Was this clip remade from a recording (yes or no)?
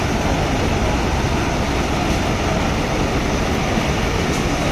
no